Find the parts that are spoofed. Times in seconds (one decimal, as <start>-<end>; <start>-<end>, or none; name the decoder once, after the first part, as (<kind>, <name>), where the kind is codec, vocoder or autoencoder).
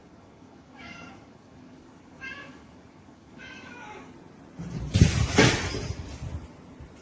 0.0-4.1 (codec, DAC)